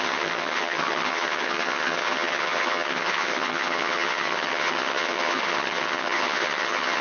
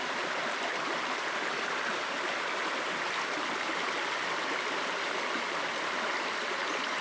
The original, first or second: second